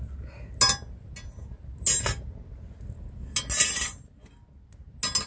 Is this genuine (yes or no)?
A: yes